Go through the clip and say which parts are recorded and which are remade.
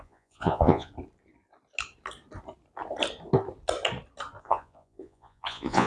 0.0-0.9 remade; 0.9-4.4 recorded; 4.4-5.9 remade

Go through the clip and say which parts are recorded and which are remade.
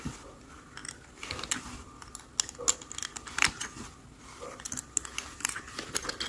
0.0-6.3 recorded